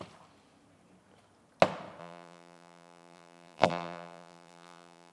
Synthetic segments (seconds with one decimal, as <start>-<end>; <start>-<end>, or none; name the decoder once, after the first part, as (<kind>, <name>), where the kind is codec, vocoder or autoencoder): 2.0-5.1 (vocoder, BigVGAN v2)